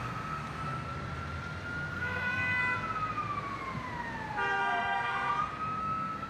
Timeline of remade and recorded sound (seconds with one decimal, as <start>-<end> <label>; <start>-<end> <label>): 0.0-0.4 remade; 0.4-1.9 recorded; 1.9-2.6 remade; 2.6-4.6 recorded; 4.6-5.3 remade; 5.3-5.8 recorded; 5.8-6.3 remade